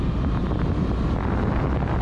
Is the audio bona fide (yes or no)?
yes